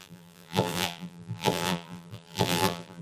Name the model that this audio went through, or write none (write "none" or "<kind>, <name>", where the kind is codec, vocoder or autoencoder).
vocoder, BigVGAN v2